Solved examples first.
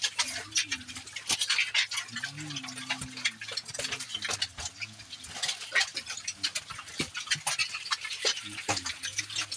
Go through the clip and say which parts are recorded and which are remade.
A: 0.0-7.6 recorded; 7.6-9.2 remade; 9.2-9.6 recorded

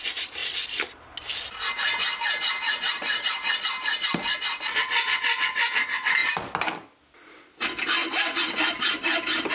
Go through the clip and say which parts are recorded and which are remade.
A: 0.0-9.5 recorded

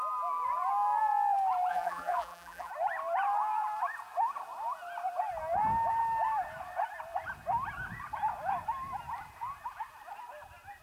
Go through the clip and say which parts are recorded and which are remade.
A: 0.0-1.7 recorded; 1.7-2.7 remade; 2.7-10.8 recorded

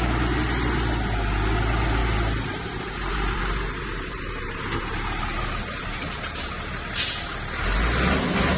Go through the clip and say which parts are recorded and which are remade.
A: 0.0-2.0 recorded; 2.0-7.1 remade; 7.1-8.6 recorded

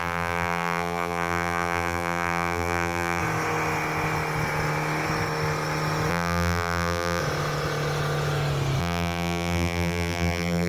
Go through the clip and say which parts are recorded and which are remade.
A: 0.0-3.2 remade; 3.2-6.1 recorded; 6.1-7.2 remade; 7.2-8.8 recorded; 8.8-10.7 remade

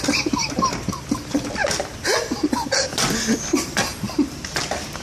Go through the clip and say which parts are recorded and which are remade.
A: 0.0-5.0 recorded

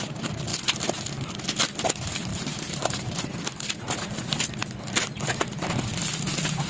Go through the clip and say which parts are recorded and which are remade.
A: 0.0-2.3 recorded; 2.3-4.4 remade; 4.4-6.7 recorded

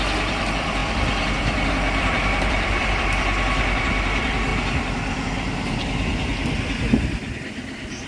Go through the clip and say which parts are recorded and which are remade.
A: 0.0-4.5 remade; 4.5-8.1 recorded